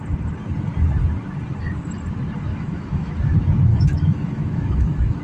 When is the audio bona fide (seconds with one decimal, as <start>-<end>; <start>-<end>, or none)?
0.0-2.5; 3.1-3.7